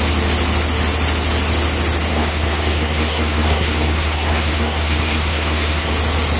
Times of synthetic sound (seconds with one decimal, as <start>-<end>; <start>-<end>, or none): 2.1-5.9

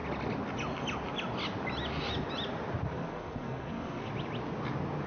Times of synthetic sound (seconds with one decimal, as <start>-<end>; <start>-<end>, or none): 2.9-4.1

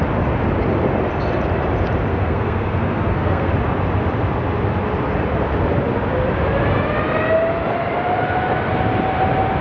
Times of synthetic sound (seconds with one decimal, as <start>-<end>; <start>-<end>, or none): 2.1-3.5

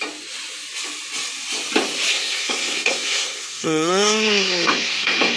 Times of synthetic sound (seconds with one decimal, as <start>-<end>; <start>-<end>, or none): 2.1-5.4

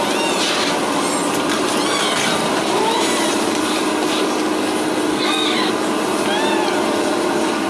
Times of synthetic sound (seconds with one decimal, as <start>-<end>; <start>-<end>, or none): 5.1-5.7

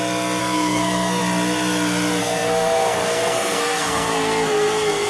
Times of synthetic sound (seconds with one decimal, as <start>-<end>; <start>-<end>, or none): 0.4-1.2; 2.2-5.1